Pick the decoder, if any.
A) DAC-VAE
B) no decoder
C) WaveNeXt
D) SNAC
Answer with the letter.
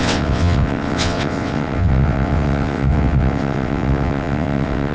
C